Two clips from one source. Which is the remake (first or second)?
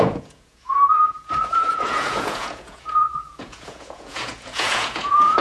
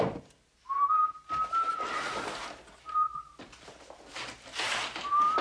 first